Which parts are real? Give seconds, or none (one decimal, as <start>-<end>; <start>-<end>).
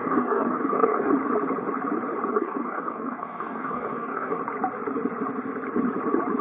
1.1-2.3; 4.4-6.4